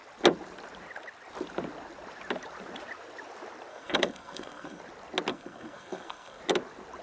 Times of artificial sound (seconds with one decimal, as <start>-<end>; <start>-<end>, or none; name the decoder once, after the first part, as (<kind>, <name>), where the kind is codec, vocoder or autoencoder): 3.7-4.8 (codec, SNAC); 5.3-6.4